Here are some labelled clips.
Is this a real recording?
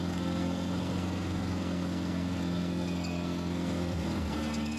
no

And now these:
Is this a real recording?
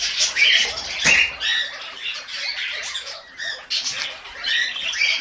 yes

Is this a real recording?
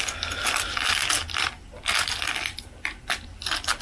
yes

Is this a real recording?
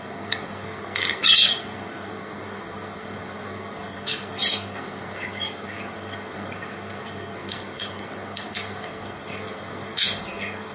no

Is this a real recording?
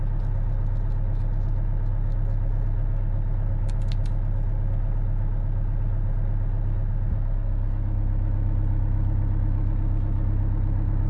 yes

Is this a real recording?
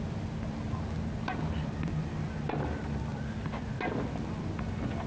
yes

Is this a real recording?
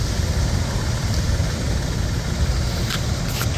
yes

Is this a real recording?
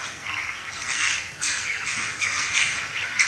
no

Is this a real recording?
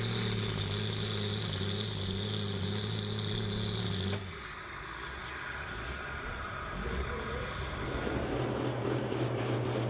yes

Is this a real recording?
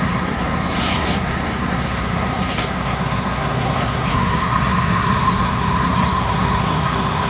no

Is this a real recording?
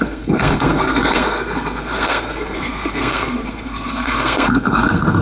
no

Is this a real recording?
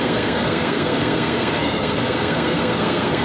no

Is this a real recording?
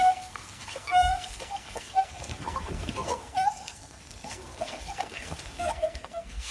no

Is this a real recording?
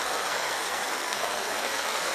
no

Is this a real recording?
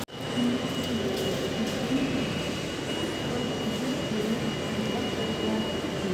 yes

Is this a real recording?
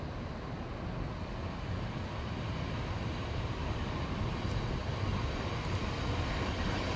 yes